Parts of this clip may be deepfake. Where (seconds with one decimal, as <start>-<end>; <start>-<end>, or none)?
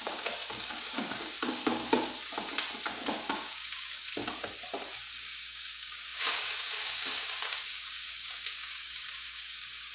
0.0-1.8; 2.9-4.1; 5.1-9.9